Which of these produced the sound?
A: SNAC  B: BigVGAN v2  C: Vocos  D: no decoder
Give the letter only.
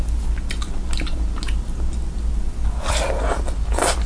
D